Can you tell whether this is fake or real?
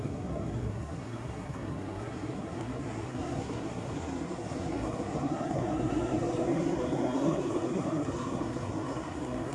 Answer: fake